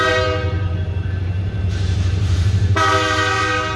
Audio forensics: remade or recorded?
remade